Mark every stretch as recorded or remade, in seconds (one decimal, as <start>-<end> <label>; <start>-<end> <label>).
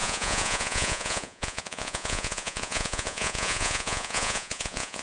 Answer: 0.0-5.0 remade